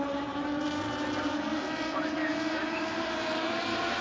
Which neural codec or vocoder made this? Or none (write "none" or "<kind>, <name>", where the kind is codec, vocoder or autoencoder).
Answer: vocoder, BigVGAN v2